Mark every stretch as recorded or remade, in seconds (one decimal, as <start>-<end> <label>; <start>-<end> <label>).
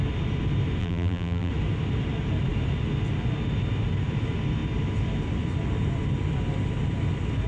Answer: 0.0-0.8 recorded; 0.8-1.5 remade; 1.5-7.5 recorded